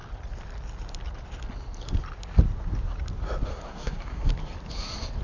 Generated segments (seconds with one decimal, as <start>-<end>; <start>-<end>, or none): 3.5-4.3